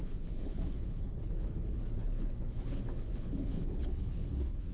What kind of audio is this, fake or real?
fake